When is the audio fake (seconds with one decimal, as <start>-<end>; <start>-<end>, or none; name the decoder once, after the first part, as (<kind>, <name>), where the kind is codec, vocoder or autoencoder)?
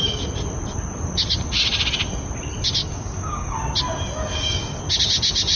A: 2.8-3.6 (codec, DAC); 4.2-4.8